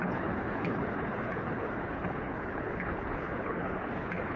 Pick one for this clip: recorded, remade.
remade